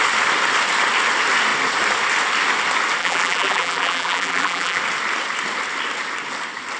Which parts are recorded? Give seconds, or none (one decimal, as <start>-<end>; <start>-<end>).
0.0-3.0; 4.8-6.8